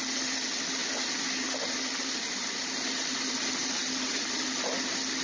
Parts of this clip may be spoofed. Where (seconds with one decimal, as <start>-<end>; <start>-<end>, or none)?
none